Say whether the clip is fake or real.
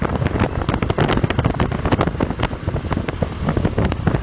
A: real